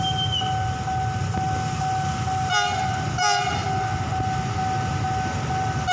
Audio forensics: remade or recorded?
recorded